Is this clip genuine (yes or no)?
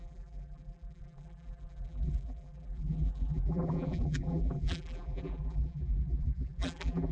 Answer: no